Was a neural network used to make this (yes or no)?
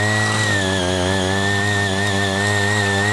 no